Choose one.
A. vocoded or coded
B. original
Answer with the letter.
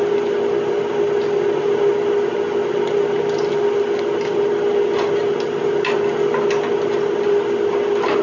B